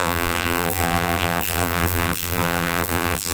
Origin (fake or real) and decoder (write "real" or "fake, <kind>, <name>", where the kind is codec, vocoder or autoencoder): fake, vocoder, BigVGAN v2